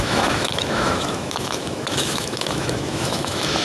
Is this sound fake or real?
fake